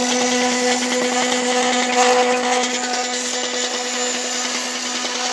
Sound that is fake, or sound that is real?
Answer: real